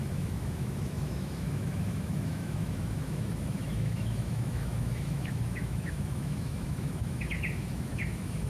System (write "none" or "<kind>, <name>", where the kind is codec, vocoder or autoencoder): autoencoder, DAC-VAE